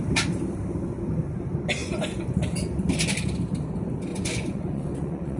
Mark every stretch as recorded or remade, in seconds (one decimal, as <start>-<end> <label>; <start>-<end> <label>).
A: 0.0-1.8 recorded; 1.8-2.4 remade; 2.4-4.1 recorded; 4.1-5.4 remade